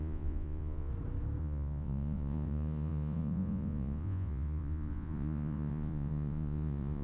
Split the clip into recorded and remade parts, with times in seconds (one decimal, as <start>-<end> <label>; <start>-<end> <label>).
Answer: 0.0-0.9 remade; 0.9-1.4 recorded; 1.4-7.0 remade